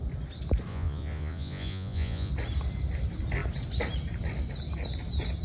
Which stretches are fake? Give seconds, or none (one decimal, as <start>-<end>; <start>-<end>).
0.7-2.3